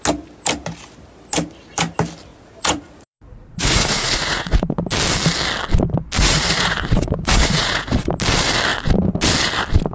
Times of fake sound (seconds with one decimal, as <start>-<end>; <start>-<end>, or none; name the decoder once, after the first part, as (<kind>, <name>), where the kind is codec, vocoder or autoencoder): 2.3-4.8 (vocoder, Vocos); 6.2-8.1